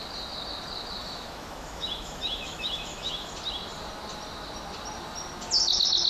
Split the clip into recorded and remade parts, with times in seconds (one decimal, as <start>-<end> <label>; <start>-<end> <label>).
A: 0.0-1.0 recorded; 1.0-3.3 remade; 3.3-6.1 recorded